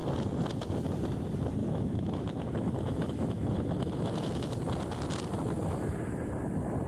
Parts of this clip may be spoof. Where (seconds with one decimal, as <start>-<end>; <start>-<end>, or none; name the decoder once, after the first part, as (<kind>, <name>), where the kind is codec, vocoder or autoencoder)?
1.6-4.6 (autoencoder, DAC-VAE)